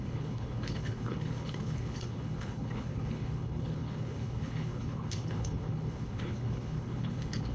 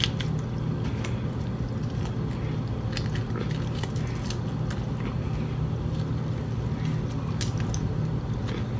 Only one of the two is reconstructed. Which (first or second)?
first